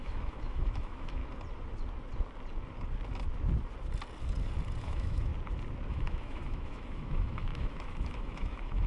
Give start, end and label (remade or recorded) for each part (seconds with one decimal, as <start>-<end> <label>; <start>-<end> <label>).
0.0-1.2 remade; 1.2-4.8 recorded; 4.8-5.3 remade; 5.3-5.9 recorded; 5.9-8.9 remade